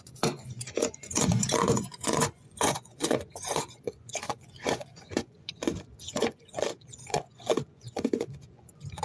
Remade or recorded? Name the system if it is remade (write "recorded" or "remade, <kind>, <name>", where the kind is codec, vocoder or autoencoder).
remade, vocoder, Vocos